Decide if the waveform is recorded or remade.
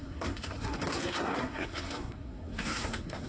remade